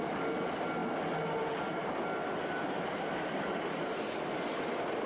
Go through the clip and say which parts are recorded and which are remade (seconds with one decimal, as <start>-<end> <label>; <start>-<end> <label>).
0.0-5.1 recorded